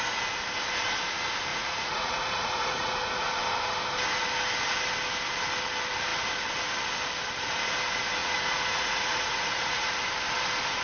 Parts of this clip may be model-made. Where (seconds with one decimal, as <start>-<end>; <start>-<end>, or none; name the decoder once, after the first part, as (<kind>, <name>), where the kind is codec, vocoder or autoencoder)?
1.5-3.1 (vocoder, Vocos); 8.2-10.0